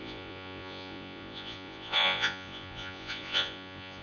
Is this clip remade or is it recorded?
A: remade